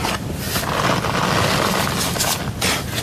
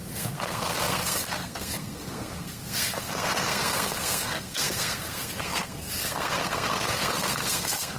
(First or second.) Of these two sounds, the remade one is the second